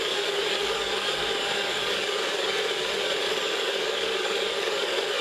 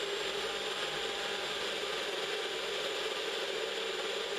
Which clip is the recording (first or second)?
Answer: second